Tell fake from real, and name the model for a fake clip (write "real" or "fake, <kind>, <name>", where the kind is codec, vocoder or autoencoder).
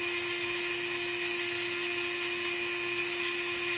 real